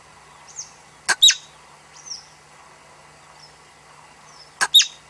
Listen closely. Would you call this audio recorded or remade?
recorded